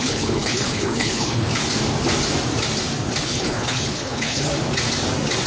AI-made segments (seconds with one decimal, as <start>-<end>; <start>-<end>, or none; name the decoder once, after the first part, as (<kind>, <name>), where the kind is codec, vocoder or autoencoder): 0.0-1.5 (codec, HILCodec); 3.2-4.5